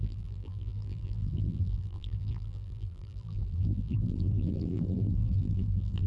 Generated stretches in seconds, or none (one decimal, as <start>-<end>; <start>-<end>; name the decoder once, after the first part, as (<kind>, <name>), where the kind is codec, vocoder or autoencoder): 0.0-6.1 (vocoder, BigVGAN v2)